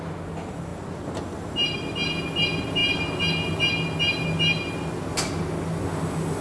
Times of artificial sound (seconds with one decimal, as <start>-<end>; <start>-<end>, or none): none